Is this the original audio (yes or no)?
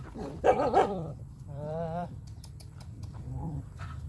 no